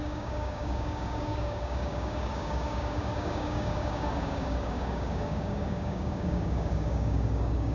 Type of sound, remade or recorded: remade